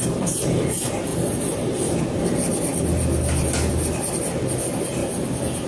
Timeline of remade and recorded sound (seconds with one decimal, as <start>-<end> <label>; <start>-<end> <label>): 0.0-1.1 recorded; 1.1-2.0 remade; 2.0-5.0 recorded; 5.0-5.7 remade